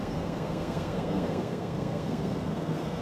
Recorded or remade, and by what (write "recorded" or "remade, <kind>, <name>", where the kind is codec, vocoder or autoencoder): remade, codec, SNAC